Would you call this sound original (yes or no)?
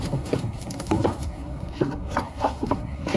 no